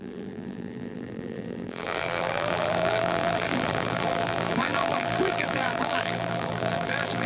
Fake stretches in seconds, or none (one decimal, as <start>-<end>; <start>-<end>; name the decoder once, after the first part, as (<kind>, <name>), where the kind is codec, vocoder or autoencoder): 0.0-7.3 (vocoder, BigVGAN v2)